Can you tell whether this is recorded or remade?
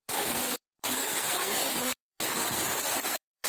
remade